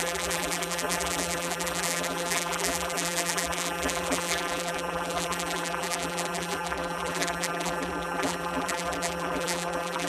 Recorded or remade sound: remade